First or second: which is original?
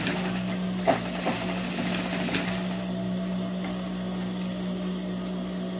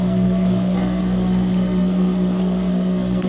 first